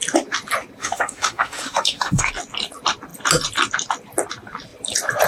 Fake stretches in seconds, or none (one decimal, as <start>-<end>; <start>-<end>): 0.8-2.3